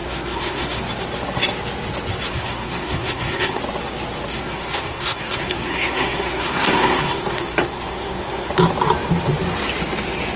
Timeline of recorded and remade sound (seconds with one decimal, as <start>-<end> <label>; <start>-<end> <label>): 0.0-0.8 remade; 0.8-2.3 recorded; 2.3-3.6 remade; 3.6-4.3 recorded; 4.3-8.5 remade; 8.5-10.4 recorded